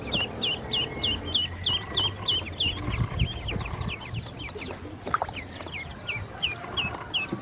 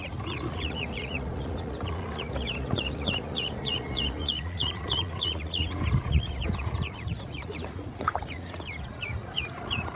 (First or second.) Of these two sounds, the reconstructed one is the second